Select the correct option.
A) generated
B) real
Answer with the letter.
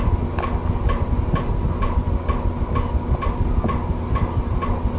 B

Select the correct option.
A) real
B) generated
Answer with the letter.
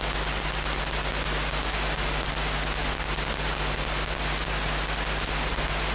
A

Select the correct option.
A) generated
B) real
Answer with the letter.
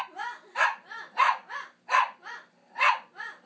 B